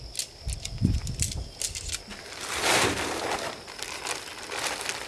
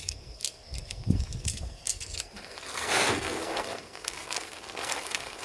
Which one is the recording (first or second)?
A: first